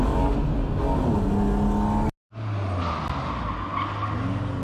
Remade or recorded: recorded